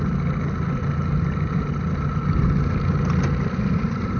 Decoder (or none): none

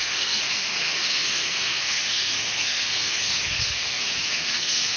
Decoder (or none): codec, SNAC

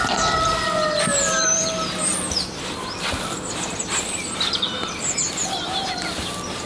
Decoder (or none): vocoder, BigVGAN v2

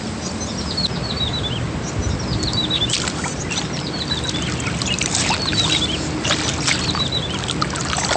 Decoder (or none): none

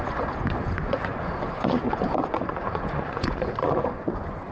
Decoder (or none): vocoder, Vocos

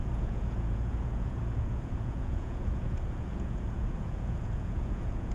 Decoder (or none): vocoder, Vocos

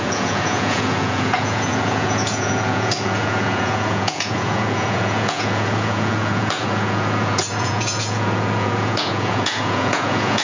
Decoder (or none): vocoder, Vocos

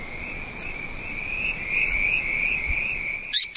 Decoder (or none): vocoder, Vocos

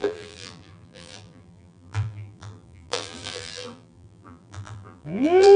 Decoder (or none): vocoder, BigVGAN v2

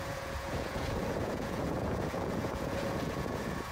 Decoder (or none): vocoder, Vocos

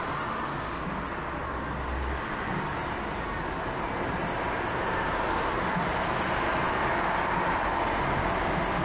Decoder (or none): none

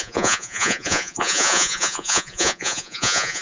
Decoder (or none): vocoder, Vocos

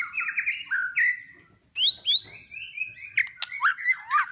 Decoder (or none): none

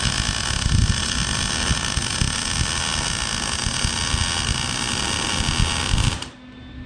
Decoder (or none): none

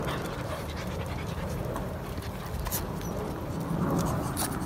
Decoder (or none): none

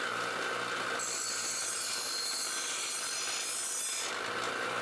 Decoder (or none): none